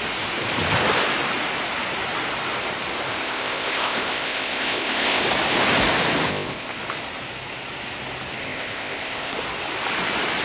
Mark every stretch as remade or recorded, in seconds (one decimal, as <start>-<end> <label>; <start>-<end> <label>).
0.0-3.1 recorded; 3.1-5.2 remade; 5.2-6.3 recorded; 6.3-6.8 remade; 6.8-8.4 recorded; 8.4-9.3 remade; 9.3-10.4 recorded